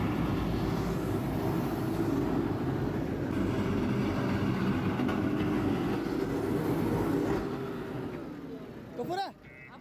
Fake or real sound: real